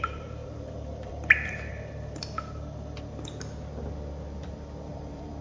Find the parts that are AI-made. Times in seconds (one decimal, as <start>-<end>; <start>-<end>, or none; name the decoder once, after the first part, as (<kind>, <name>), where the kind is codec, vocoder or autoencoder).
0.0-1.7 (vocoder, BigVGAN v2); 4.9-5.4